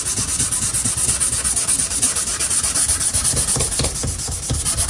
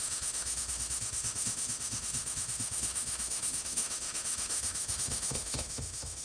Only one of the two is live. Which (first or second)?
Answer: first